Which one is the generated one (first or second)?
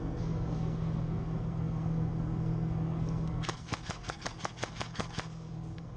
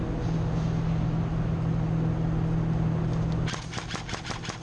first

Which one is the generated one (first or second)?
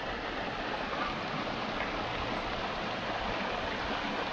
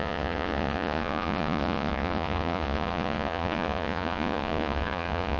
second